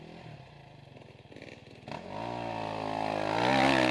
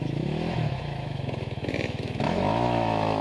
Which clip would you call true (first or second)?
first